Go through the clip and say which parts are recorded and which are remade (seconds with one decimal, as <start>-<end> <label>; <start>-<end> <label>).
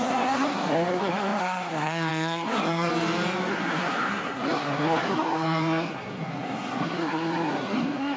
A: 0.0-2.9 remade; 2.9-3.5 recorded; 3.5-8.2 remade